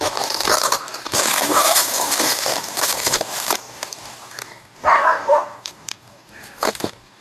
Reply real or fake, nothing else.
fake